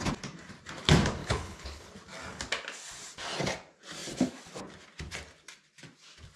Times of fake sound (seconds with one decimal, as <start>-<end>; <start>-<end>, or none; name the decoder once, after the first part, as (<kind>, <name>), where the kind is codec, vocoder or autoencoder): 1.2-1.9 (codec, HILCodec)